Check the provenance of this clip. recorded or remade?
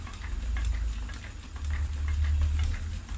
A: recorded